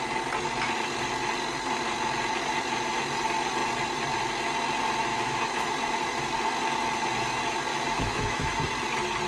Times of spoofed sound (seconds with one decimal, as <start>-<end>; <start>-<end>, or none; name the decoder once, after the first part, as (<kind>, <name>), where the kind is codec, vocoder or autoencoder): 5.1-5.7 (autoencoder, DAC-VAE); 7.7-8.7